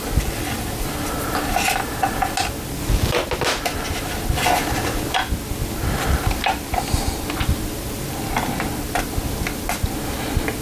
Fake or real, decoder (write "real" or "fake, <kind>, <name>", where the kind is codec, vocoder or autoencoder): real